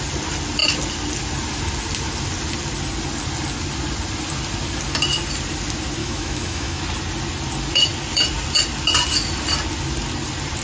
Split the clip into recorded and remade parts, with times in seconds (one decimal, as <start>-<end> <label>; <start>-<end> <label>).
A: 0.0-6.0 recorded; 6.0-6.8 remade; 6.8-10.6 recorded